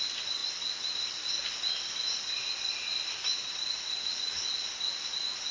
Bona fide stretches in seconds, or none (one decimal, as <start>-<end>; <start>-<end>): 0.0-5.5